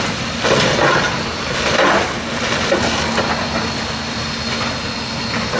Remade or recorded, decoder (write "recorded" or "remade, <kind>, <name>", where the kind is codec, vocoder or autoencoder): recorded